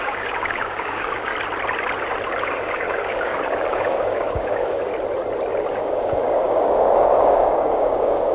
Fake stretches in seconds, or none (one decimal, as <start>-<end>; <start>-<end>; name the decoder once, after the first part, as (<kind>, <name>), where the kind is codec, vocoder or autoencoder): 0.0-1.3 (codec, DAC); 2.4-4.9; 5.7-8.3